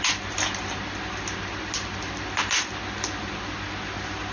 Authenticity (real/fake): real